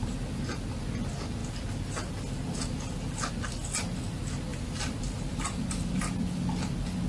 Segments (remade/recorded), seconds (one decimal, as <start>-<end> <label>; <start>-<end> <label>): 0.0-4.5 recorded; 4.5-6.0 remade; 6.0-7.1 recorded